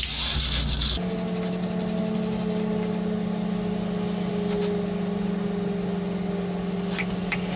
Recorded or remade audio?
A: recorded